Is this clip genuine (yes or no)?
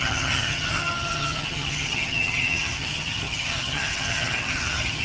no